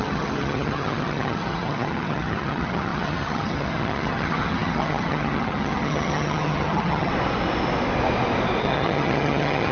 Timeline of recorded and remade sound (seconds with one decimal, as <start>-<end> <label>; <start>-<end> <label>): 0.0-7.1 remade; 7.1-8.6 recorded; 8.6-9.7 remade